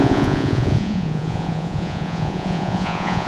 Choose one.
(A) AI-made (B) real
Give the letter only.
A